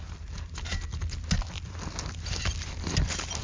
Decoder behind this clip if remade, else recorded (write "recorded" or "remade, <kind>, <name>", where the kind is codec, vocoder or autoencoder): recorded